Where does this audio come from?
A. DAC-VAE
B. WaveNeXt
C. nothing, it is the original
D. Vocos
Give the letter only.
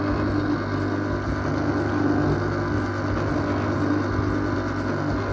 C